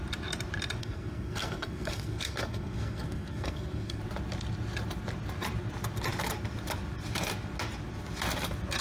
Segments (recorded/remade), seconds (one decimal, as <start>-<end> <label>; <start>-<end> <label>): 0.0-0.8 recorded; 0.8-4.0 remade; 4.0-8.8 recorded